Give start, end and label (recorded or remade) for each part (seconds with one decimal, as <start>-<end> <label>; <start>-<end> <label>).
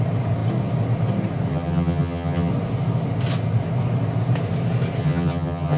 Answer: 0.0-1.5 recorded; 1.5-2.5 remade; 2.5-5.0 recorded; 5.0-5.8 remade